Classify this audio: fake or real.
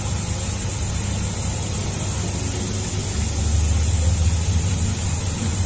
real